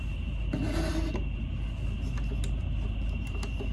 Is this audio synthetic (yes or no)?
no